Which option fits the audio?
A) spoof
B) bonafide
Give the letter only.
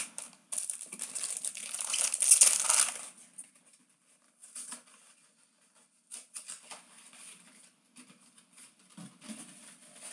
B